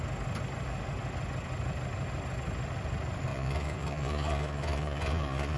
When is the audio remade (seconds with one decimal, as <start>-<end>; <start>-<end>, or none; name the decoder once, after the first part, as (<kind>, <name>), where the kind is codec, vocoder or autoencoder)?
3.3-5.6 (vocoder, Vocos)